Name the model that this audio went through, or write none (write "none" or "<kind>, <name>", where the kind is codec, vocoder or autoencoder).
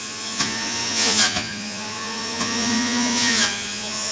vocoder, Vocos